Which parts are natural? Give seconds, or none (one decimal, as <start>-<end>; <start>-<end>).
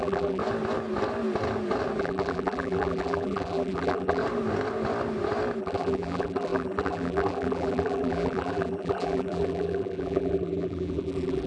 0.4-2.0; 4.2-5.6